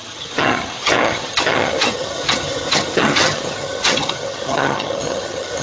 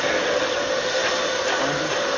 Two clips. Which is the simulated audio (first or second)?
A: first